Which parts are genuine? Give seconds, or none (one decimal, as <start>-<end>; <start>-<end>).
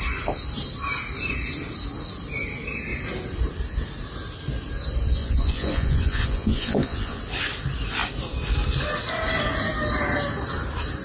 0.0-5.2; 7.2-11.0